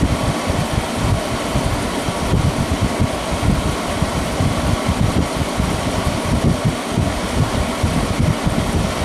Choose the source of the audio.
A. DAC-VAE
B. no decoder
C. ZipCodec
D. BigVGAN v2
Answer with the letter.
B